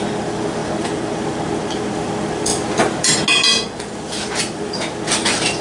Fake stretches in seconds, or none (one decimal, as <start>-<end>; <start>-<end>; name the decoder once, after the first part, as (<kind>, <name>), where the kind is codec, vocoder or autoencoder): none